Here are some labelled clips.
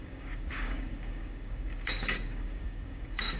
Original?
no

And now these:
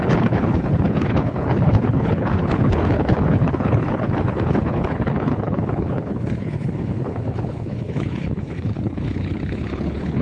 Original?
no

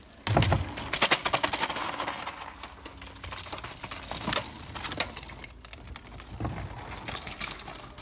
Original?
yes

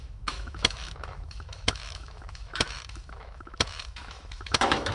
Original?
no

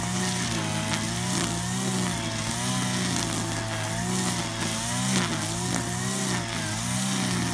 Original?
yes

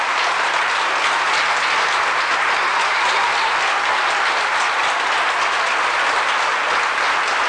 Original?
yes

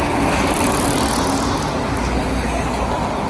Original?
yes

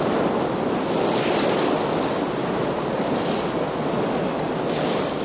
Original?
yes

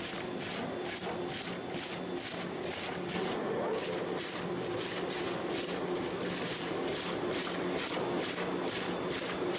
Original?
yes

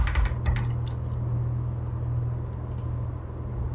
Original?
yes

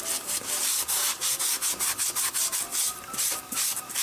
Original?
no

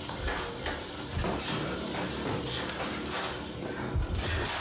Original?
yes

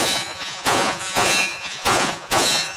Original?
no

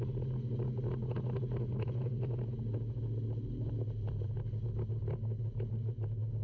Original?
yes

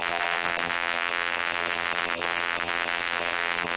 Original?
no